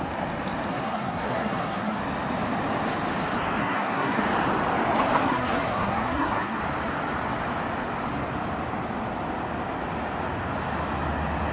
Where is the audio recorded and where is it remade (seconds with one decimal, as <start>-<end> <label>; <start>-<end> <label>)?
0.0-0.7 recorded; 0.7-2.0 remade; 2.0-3.6 recorded; 3.6-4.2 remade; 4.2-5.2 recorded; 5.2-6.6 remade; 6.6-11.5 recorded